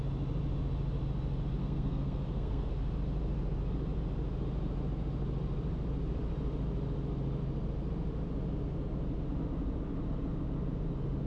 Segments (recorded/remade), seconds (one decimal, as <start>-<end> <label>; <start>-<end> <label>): 0.0-1.6 recorded; 1.6-2.7 remade; 2.7-11.3 recorded